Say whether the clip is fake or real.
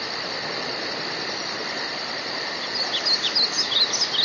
real